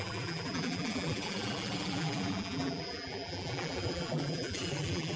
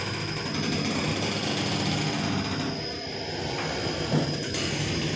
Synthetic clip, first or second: first